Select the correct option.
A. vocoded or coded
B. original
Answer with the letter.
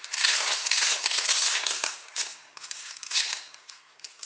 A